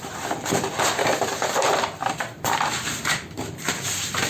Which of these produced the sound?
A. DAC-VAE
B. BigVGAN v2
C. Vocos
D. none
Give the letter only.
D